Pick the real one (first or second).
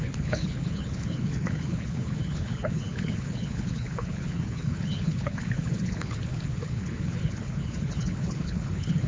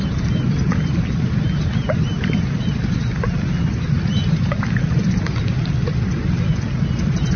second